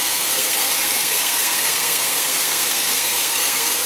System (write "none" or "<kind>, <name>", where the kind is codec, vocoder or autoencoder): codec, SNAC